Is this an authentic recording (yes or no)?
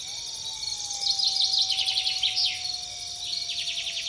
yes